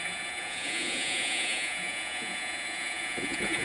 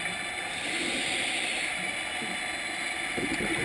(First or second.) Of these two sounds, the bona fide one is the second